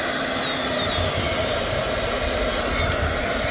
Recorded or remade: recorded